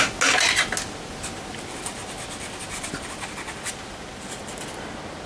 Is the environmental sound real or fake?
real